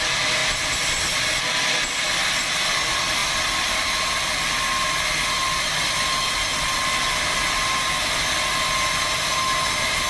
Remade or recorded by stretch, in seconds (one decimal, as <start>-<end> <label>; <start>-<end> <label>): 0.0-0.4 recorded; 0.4-1.4 remade; 1.4-10.1 recorded